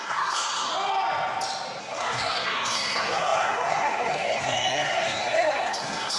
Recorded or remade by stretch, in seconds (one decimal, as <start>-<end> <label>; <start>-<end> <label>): 0.0-0.7 remade; 0.7-1.8 recorded; 1.8-6.2 remade